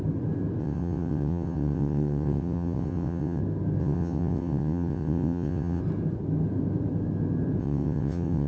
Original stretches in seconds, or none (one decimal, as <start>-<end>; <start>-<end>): 0.0-0.6; 3.4-3.8; 5.8-7.6